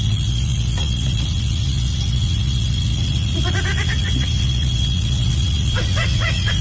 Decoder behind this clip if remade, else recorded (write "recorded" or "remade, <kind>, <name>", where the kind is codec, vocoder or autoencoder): remade, vocoder, Vocos